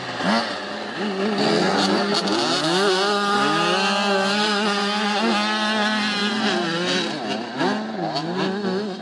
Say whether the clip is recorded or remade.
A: recorded